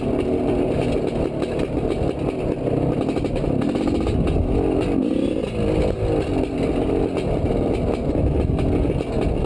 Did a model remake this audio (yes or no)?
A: no